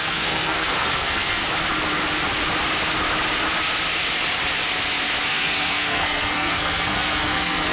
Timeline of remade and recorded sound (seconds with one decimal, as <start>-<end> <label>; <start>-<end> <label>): 0.0-1.4 remade; 1.4-5.3 recorded; 5.3-7.7 remade

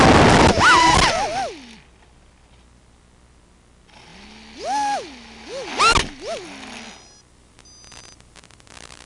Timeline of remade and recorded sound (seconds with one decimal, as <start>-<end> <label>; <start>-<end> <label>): 0.0-9.1 recorded

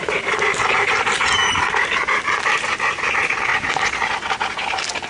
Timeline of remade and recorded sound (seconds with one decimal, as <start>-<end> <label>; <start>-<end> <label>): 0.0-5.1 recorded

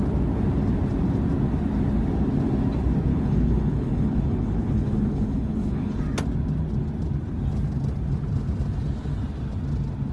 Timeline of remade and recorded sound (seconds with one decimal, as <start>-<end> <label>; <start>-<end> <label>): 0.0-3.1 recorded; 3.1-6.0 remade; 6.0-10.1 recorded

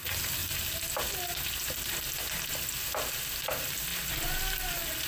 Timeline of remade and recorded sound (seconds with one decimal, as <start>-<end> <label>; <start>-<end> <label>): 0.0-0.4 remade; 0.4-3.5 recorded; 3.5-3.9 remade; 3.9-4.4 recorded; 4.4-5.1 remade

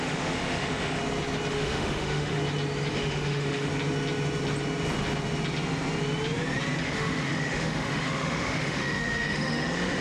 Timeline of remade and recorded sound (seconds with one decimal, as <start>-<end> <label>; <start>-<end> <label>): 0.0-1.0 remade; 1.0-1.5 recorded; 1.5-2.4 remade; 2.4-2.9 recorded; 2.9-3.7 remade; 3.7-6.8 recorded; 6.8-10.0 remade